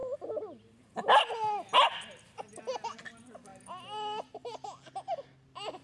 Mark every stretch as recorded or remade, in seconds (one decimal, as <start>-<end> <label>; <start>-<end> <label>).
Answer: 0.0-5.8 recorded